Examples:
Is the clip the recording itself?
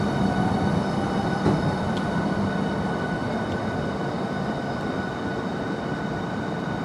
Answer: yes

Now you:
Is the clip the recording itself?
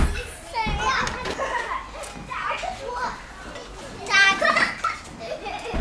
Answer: yes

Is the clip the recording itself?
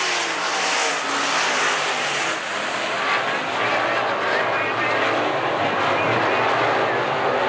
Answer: yes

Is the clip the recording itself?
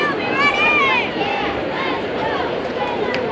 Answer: no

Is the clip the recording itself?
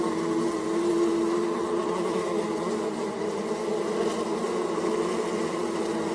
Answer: yes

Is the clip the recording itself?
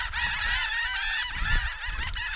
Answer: no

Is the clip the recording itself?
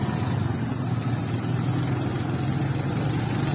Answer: yes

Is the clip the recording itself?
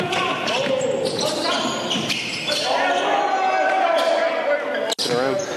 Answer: yes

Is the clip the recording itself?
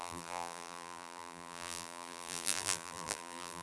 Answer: no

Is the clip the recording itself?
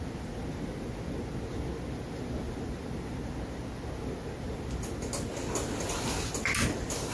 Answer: yes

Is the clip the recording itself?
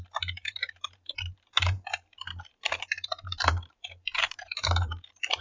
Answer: no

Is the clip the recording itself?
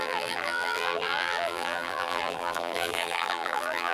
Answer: no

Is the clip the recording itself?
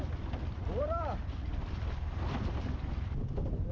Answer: no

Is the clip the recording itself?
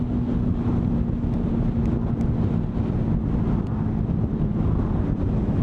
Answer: yes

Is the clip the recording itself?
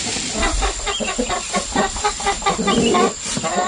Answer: no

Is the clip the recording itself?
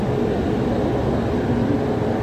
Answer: yes